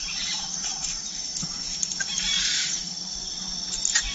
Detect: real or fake real